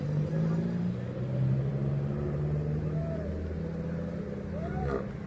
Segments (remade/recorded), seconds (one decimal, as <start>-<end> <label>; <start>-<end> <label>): 0.0-5.3 recorded